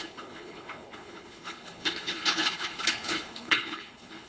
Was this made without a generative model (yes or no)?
no